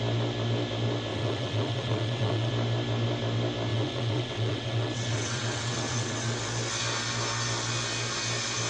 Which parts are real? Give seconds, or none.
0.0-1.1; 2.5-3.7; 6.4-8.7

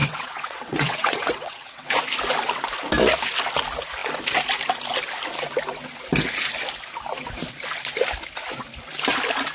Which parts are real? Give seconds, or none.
1.9-9.5

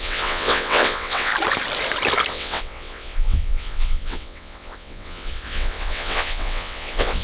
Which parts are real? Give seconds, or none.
1.3-2.3